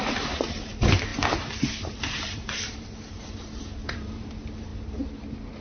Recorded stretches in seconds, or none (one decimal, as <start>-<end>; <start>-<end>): 4.7-5.6